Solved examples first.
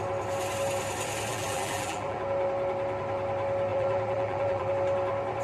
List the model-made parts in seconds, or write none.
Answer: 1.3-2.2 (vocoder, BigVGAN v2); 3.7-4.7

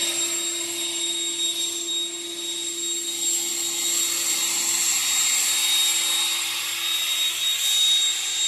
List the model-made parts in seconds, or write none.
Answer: none